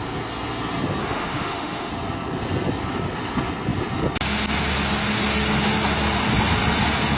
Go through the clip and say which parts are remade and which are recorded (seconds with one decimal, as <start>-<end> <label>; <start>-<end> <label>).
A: 0.0-1.0 recorded; 1.0-1.9 remade; 1.9-7.2 recorded